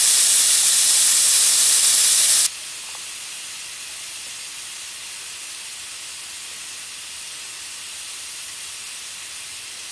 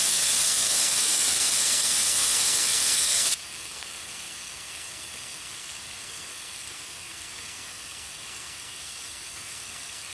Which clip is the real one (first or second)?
first